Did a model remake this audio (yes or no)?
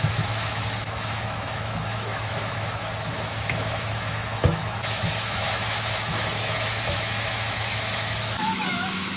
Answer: yes